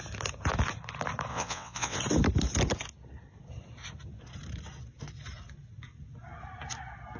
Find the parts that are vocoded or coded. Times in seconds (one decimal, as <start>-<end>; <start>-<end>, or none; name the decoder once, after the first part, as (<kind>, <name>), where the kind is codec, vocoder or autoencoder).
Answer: 1.3-2.0 (vocoder, WaveNeXt)